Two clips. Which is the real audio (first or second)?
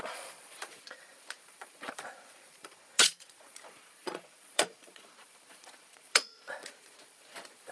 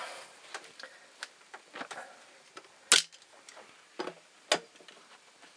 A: second